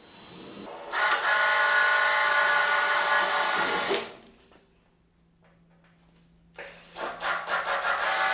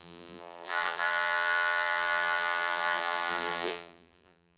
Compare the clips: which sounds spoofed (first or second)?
second